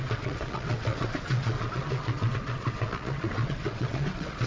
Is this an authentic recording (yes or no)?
no